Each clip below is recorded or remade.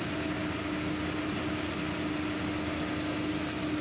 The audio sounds recorded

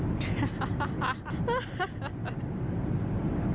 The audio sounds recorded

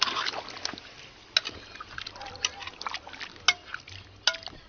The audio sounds recorded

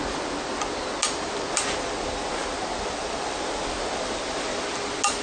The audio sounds recorded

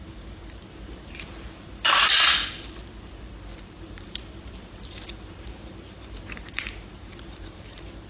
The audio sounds remade